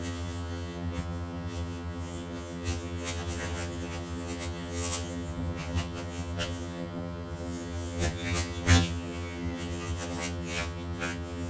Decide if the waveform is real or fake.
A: fake